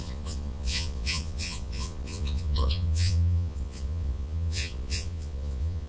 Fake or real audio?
fake